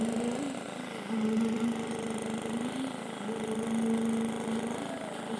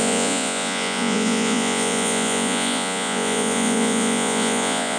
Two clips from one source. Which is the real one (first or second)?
first